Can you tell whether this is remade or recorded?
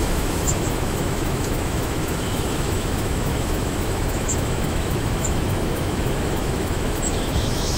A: remade